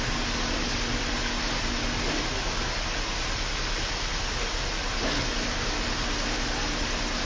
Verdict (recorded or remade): recorded